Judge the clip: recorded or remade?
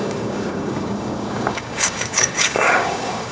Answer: remade